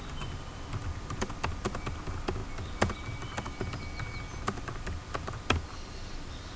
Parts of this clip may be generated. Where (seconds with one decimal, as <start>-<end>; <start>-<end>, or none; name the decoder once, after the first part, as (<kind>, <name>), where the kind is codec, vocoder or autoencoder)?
none